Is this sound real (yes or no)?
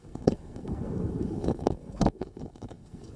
no